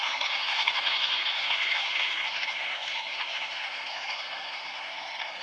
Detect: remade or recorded remade